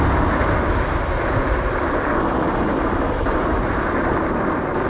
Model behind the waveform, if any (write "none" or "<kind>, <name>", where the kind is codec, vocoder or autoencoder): none